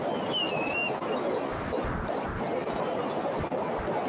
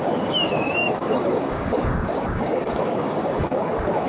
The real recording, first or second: first